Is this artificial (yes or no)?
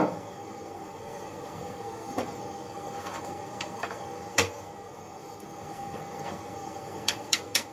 yes